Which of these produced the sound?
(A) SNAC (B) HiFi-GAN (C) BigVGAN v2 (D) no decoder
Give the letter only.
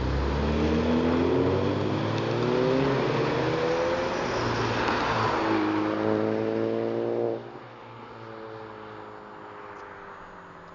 D